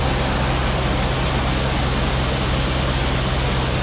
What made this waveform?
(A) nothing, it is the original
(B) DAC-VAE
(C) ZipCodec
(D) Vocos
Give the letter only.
A